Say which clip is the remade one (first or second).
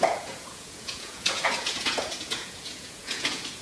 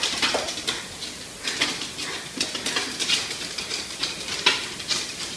first